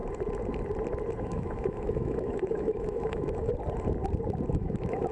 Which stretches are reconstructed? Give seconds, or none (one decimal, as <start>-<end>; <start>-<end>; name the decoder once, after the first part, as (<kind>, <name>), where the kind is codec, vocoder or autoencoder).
1.2-3.5 (autoencoder, DAC-VAE); 4.5-5.1